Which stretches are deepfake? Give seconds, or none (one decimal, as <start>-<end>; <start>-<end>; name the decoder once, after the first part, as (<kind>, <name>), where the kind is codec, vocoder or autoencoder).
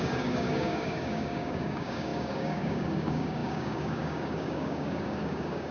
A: 0.0-5.7 (codec, DAC)